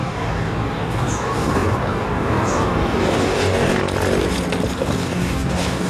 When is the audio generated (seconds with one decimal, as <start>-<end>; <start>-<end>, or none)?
0.0-3.8; 4.8-5.9